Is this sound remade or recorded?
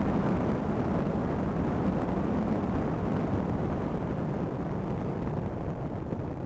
recorded